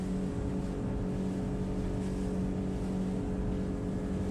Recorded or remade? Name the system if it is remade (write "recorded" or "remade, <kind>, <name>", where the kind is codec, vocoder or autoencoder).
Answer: recorded